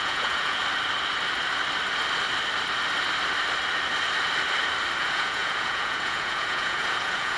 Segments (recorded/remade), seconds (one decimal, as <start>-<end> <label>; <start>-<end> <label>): 0.0-0.6 remade; 0.6-5.0 recorded; 5.0-7.4 remade